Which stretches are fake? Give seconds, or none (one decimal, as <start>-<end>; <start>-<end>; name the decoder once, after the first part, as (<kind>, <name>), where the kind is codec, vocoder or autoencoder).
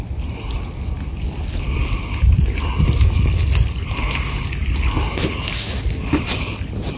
none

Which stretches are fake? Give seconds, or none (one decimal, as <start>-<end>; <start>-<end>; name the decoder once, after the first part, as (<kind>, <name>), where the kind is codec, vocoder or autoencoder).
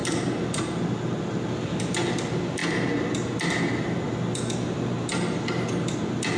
none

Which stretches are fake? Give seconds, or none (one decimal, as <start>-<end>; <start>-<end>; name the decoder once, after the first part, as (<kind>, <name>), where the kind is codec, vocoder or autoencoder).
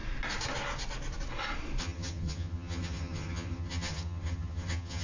1.8-5.0 (vocoder, HiFi-GAN)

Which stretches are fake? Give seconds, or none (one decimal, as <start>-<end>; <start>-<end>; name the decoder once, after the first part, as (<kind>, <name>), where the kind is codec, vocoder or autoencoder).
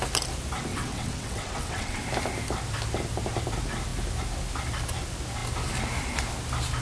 0.7-2.0 (vocoder, WaveNeXt)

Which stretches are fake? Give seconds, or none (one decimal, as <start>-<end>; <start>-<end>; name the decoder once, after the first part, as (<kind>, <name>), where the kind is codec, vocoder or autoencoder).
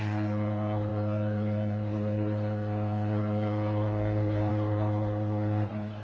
0.0-6.0 (codec, SNAC)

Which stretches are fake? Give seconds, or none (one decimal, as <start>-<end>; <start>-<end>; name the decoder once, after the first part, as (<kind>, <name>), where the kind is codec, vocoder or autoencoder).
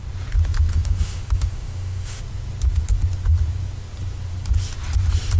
0.7-2.2 (autoencoder, DAC-VAE)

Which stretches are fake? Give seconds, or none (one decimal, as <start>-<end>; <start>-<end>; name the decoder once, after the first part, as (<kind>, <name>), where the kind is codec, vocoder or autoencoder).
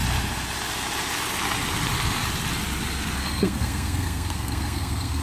3.2-5.2 (codec, SNAC)